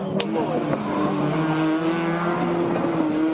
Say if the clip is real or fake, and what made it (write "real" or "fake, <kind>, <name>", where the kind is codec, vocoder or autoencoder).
real